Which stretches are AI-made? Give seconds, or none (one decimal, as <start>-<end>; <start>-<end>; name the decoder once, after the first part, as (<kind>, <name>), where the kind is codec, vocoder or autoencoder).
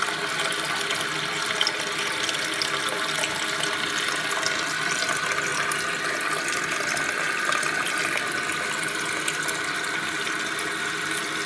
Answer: none